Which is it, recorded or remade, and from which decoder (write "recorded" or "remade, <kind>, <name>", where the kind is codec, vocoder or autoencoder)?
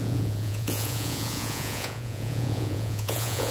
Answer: remade, vocoder, Vocos